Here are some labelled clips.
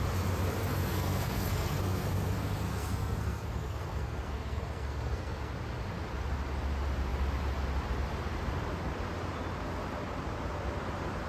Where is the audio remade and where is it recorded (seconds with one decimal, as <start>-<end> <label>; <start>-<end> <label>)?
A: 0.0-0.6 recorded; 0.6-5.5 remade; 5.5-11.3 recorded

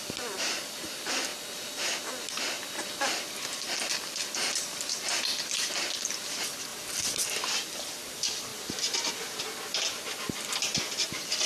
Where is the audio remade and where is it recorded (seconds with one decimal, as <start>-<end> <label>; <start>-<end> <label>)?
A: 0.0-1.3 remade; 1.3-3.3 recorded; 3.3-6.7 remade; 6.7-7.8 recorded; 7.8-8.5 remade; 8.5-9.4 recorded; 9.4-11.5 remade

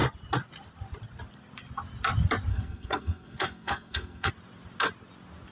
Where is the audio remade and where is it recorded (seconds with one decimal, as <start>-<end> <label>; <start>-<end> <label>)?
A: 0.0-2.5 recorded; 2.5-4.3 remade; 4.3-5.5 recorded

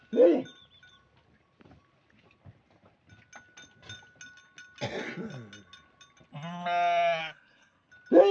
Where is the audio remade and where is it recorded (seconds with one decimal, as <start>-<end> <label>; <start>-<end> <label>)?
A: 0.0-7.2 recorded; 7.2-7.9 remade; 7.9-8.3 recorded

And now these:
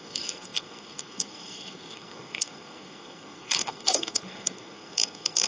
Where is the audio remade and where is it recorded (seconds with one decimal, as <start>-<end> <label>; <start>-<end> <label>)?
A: 0.0-5.5 remade